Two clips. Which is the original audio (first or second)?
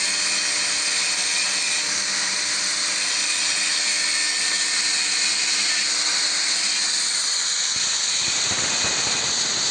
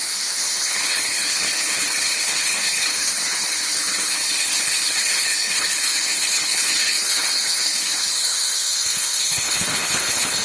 first